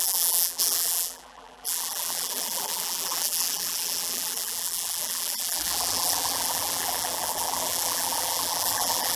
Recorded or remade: remade